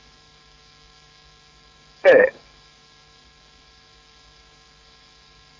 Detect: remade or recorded remade